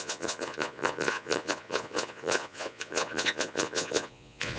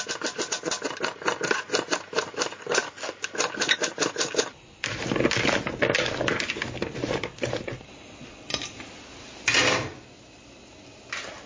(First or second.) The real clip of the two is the second